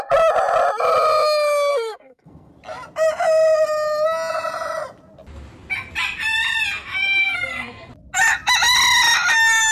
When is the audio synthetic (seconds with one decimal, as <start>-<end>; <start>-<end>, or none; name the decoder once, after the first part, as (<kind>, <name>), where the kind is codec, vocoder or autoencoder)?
1.7-2.5 (codec, SNAC); 7.2-7.9